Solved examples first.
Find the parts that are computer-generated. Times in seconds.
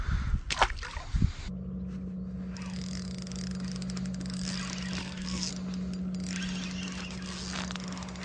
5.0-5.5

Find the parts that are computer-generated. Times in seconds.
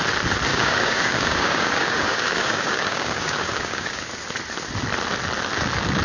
0.5-4.1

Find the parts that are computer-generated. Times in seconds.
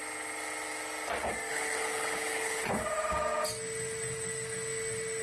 1.5-2.7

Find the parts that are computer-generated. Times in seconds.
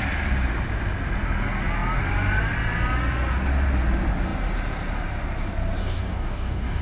5.8-6.8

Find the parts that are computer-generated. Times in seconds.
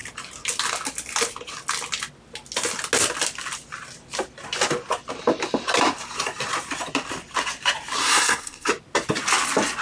8.0-8.7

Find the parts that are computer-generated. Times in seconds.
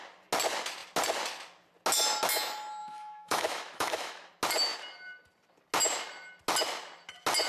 2.8-4.3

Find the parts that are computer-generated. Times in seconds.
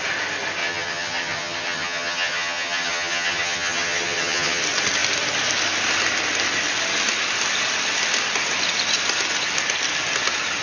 0.6-4.6